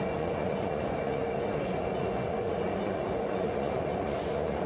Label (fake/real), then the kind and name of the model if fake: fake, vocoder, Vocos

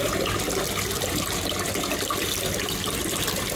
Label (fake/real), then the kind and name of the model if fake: real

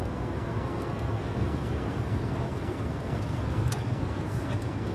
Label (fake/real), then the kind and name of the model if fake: fake, codec, SNAC